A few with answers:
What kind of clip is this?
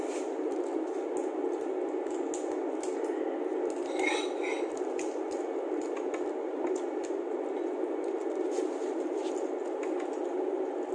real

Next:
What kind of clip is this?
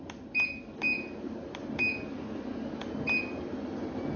real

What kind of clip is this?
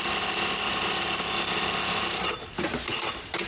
real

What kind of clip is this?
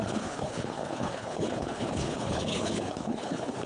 fake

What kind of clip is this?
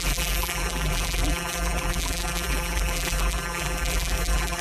fake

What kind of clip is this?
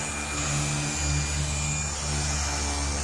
real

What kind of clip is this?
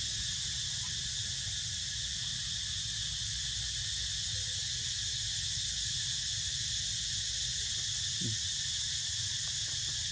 real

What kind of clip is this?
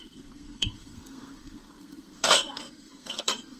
fake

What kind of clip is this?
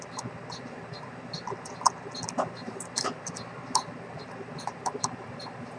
fake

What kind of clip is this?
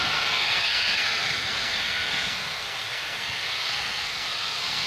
fake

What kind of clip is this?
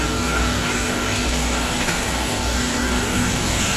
fake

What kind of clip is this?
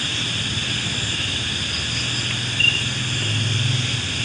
real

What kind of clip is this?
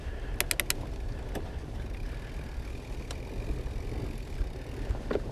real